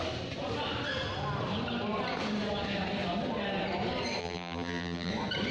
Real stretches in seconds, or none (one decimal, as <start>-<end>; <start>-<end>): 0.0-4.2; 5.1-5.5